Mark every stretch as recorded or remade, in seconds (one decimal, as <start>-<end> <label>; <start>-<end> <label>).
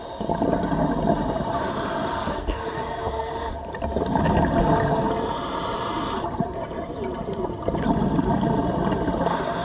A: 0.0-2.1 recorded; 2.1-3.3 remade; 3.3-9.6 recorded